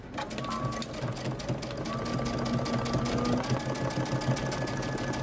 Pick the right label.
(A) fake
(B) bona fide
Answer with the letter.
B